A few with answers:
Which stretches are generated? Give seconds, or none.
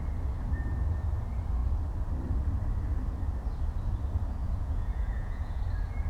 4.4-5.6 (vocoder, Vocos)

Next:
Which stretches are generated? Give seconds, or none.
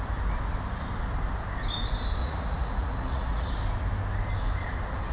2.2-3.5 (vocoder, Vocos)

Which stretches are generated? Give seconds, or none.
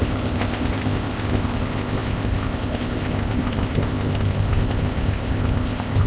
0.0-6.1 (codec, ZipCodec)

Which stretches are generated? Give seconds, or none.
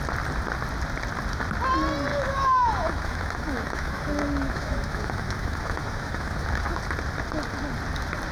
2.1-6.8 (autoencoder, DAC-VAE)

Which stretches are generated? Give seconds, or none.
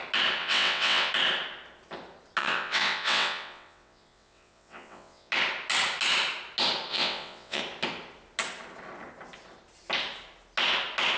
0.4-1.1 (vocoder, WaveNeXt); 2.4-5.3; 6.9-7.6